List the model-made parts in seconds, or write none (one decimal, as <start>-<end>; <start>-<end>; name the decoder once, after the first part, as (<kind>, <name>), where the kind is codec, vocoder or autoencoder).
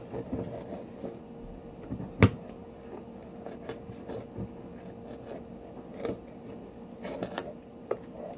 none